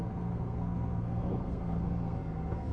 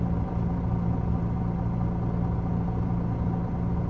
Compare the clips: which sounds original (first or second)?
second